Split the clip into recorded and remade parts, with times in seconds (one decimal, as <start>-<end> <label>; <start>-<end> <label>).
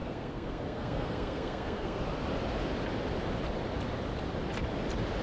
0.0-2.0 remade; 2.0-5.2 recorded